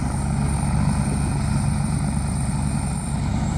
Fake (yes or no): no